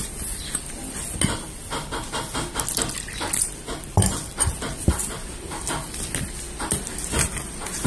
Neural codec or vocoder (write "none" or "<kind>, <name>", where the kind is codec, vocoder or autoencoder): none